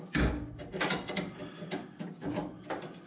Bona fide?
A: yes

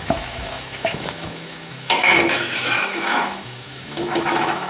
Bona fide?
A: no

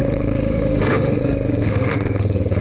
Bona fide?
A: no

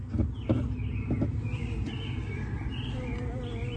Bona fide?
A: yes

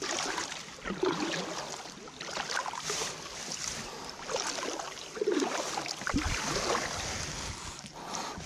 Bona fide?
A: yes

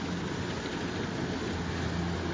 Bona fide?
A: yes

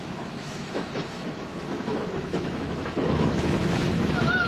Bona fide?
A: no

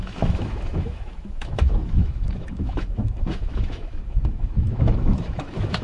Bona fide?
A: no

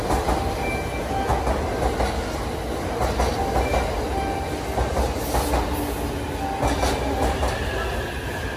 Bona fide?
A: yes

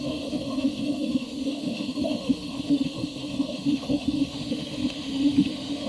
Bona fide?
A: no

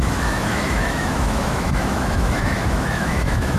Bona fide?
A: no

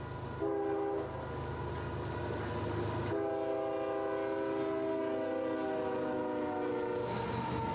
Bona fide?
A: yes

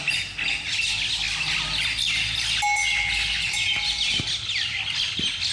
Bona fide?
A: yes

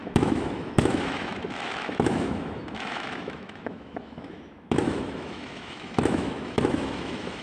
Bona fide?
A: no